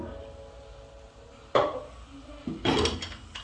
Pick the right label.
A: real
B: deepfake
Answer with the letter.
A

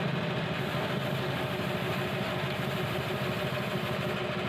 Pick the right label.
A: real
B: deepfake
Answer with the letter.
A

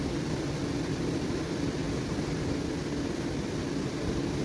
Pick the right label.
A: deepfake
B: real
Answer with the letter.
B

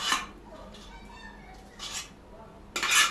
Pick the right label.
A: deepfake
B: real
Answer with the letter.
B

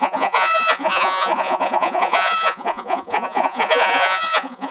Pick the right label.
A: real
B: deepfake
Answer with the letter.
B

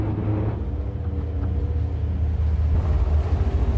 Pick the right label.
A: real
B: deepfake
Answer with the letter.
A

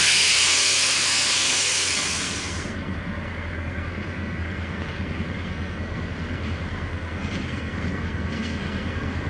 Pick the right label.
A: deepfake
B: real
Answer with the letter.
A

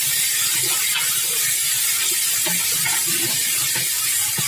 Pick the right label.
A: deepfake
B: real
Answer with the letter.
B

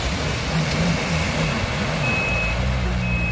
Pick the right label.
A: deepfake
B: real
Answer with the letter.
B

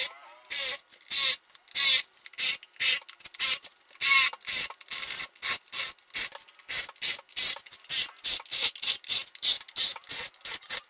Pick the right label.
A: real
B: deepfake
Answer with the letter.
A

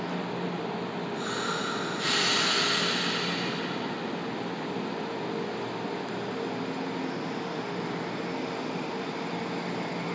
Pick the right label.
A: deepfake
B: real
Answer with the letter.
B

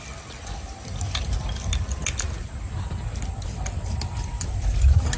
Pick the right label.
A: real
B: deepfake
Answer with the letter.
A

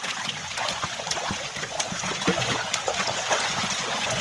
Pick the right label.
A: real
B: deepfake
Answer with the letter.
B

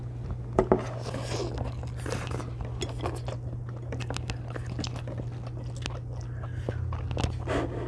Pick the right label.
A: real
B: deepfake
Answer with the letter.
A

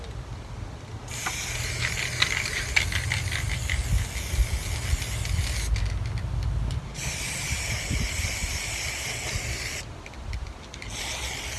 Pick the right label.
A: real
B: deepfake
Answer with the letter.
A